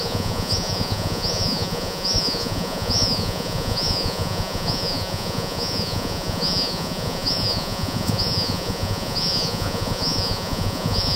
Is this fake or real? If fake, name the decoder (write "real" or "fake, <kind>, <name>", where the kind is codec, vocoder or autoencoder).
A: fake, vocoder, Vocos